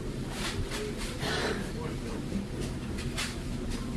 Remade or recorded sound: recorded